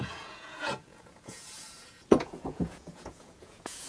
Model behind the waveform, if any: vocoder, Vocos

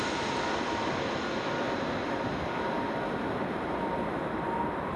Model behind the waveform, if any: none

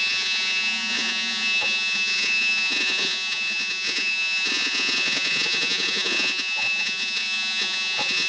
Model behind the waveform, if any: vocoder, Vocos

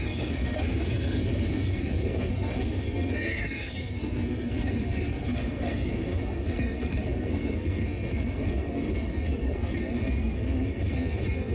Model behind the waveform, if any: codec, SNAC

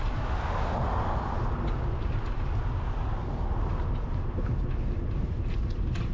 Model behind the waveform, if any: none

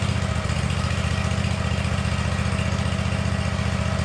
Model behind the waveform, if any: none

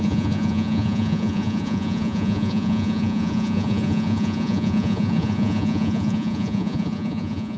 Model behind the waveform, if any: vocoder, Vocos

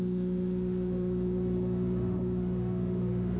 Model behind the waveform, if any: autoencoder, DAC-VAE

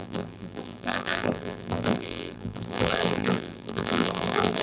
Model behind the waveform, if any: vocoder, BigVGAN v2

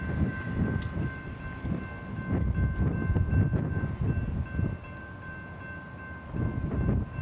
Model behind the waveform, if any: none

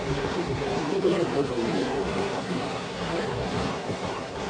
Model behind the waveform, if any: codec, SNAC